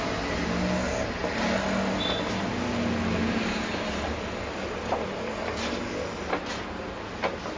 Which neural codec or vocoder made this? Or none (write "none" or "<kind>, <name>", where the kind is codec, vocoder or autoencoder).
none